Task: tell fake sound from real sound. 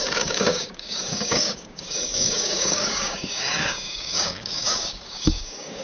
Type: fake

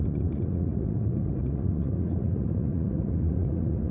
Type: fake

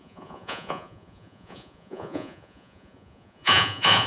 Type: fake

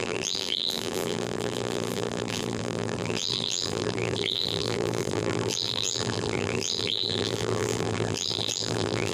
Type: fake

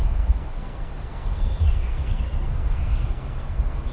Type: fake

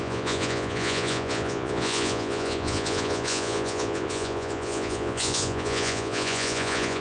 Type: fake